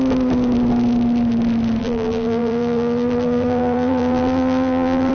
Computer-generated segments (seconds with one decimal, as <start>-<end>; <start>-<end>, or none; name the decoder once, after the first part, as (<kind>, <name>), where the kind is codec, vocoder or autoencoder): 1.8-5.1 (vocoder, BigVGAN v2)